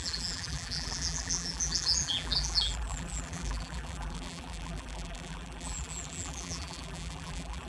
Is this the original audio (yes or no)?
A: no